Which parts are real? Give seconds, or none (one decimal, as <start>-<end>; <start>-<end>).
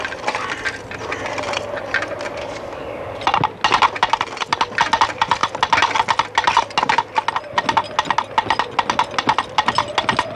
0.0-2.4; 3.2-10.3